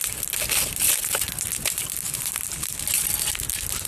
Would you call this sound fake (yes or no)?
no